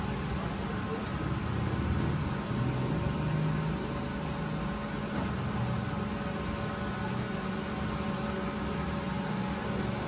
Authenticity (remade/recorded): recorded